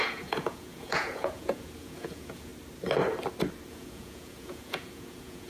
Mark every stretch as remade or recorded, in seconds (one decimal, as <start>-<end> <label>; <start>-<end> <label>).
0.0-2.5 remade; 2.5-3.7 recorded; 3.7-5.5 remade